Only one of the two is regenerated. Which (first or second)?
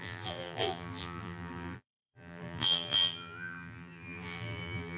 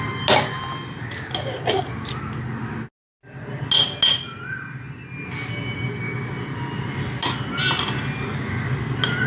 first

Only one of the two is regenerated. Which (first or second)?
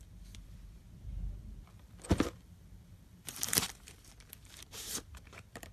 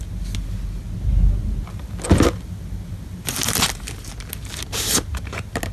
first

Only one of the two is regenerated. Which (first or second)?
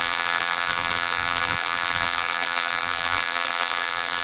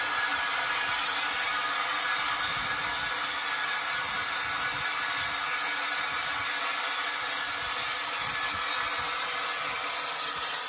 first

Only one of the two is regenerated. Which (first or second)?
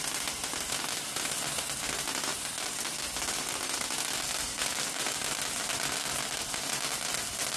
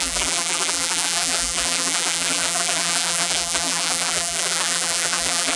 second